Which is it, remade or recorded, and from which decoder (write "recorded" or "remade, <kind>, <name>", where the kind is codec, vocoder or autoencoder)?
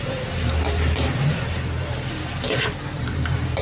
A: remade, vocoder, BigVGAN v2